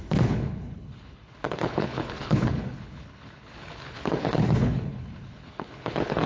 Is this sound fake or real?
fake